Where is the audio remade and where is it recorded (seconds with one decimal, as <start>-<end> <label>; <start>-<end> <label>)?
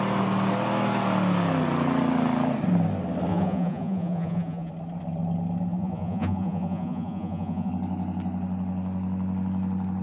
0.0-3.3 recorded; 3.3-4.7 remade; 4.7-5.7 recorded; 5.7-7.7 remade; 7.7-10.0 recorded